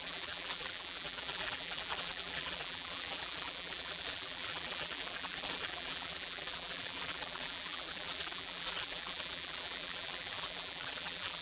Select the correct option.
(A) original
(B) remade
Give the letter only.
B